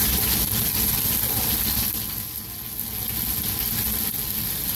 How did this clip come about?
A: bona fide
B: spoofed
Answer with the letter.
A